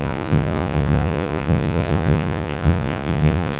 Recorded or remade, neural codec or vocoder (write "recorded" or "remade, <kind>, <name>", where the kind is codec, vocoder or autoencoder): remade, vocoder, Vocos